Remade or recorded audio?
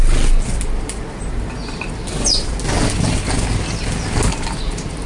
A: recorded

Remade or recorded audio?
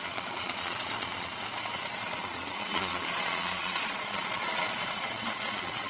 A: remade